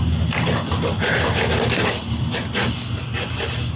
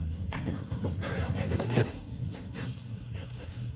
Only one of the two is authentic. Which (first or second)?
first